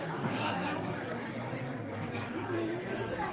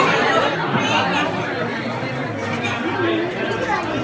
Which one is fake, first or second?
first